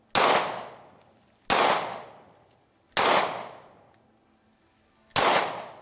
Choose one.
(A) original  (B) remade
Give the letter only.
A